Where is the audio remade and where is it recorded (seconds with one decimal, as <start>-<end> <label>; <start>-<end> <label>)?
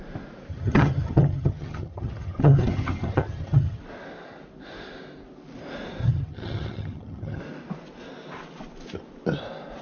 0.0-0.5 recorded; 0.5-3.8 remade; 3.8-6.0 recorded; 6.0-7.4 remade; 7.4-9.8 recorded